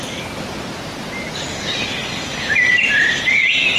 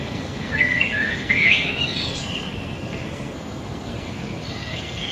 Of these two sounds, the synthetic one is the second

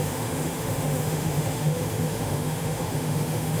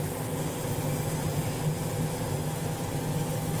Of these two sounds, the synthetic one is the first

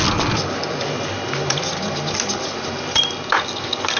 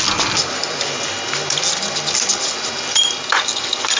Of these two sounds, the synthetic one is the first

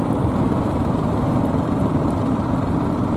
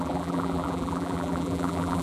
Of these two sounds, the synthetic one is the second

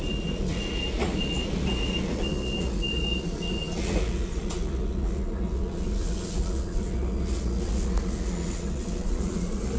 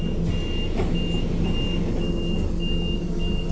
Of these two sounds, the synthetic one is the first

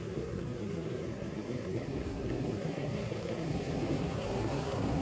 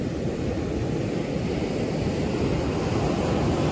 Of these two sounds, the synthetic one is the first